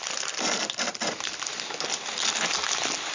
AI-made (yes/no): no